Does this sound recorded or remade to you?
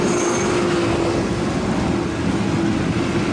recorded